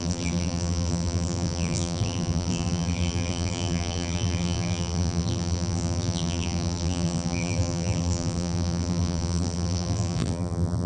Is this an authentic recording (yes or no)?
no